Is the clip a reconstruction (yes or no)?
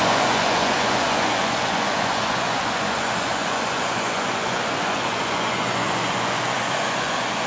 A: yes